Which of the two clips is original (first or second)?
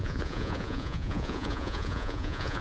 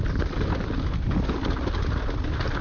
second